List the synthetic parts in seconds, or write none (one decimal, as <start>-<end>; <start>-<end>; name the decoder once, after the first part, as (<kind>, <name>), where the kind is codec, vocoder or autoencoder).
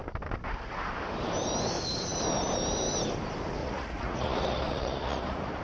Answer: 3.6-5.6 (vocoder, Vocos)